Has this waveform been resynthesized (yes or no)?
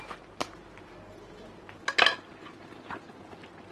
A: no